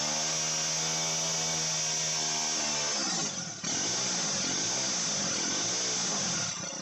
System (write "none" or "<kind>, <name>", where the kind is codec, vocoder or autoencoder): none